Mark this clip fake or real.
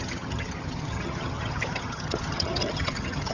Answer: fake